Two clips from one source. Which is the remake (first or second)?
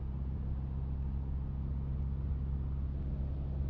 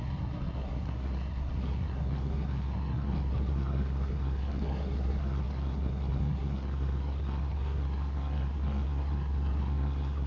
second